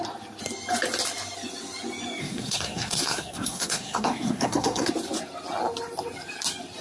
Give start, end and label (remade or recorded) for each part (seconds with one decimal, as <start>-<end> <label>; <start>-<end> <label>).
0.0-2.2 recorded; 2.2-4.9 remade; 4.9-6.8 recorded